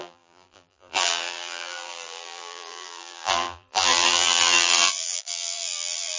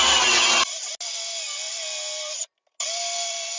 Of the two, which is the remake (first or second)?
first